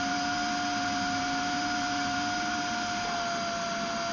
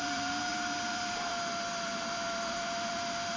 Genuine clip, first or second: first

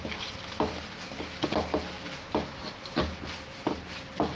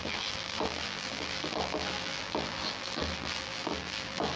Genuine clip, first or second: first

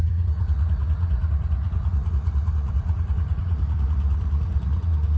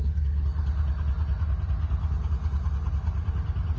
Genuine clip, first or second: second